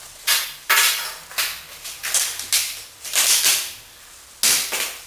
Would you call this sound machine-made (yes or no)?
no